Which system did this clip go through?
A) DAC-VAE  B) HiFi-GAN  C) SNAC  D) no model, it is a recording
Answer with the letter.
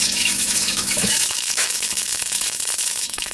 A